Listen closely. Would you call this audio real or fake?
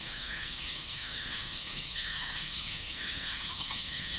fake